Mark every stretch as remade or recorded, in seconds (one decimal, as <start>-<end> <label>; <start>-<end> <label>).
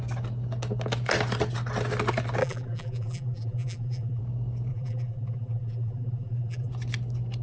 0.0-2.4 recorded; 2.4-4.2 remade; 4.2-4.7 recorded; 4.7-6.7 remade; 6.7-7.4 recorded